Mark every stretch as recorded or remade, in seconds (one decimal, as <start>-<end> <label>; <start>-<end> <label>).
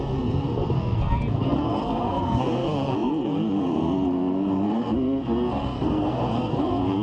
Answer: 0.0-7.0 remade